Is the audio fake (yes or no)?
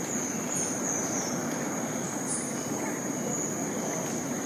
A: no